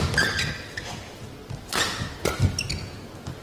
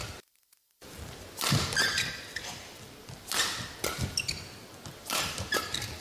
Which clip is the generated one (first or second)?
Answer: second